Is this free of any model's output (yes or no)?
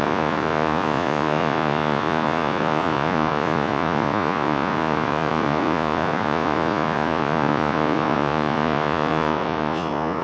no